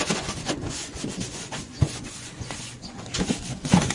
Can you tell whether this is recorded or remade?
remade